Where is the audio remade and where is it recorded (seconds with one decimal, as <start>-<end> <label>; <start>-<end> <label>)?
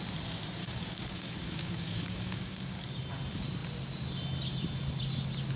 0.0-0.6 recorded; 0.6-2.8 remade; 2.8-5.6 recorded